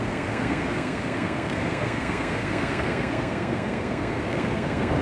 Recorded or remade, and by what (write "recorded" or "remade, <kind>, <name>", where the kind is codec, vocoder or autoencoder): remade, codec, SNAC